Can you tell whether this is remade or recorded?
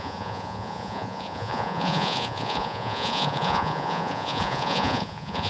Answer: remade